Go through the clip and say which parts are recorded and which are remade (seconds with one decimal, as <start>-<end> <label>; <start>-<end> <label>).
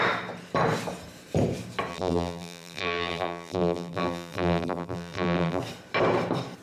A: 0.0-1.9 recorded; 1.9-5.6 remade; 5.6-6.6 recorded